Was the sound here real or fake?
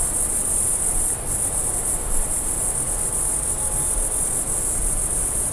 real